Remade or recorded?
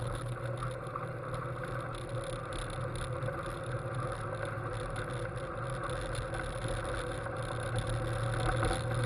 recorded